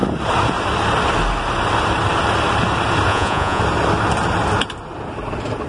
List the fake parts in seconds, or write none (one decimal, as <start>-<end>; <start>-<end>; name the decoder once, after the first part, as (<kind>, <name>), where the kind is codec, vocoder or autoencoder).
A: 3.1-3.6 (vocoder, Vocos)